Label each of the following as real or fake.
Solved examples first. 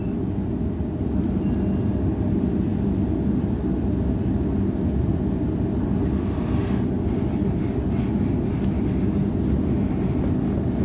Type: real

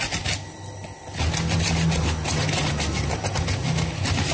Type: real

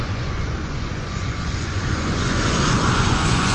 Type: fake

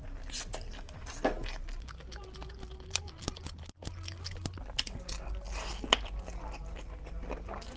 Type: real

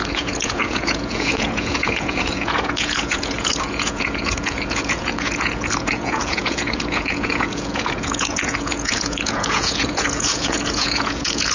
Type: fake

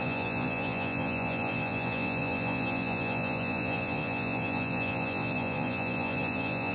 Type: fake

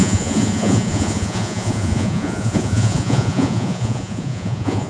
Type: fake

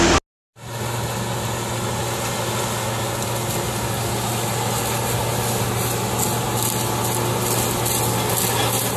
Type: real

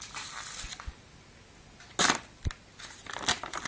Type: real